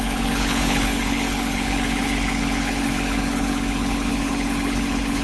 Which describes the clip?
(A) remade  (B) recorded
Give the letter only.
A